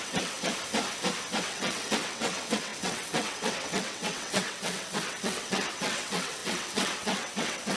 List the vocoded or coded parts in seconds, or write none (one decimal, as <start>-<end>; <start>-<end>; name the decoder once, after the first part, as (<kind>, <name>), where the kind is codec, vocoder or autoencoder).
0.0-0.5 (vocoder, WaveNeXt); 1.4-7.8